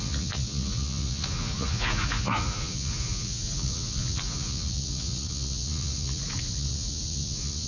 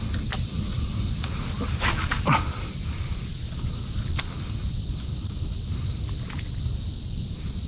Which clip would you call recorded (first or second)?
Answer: second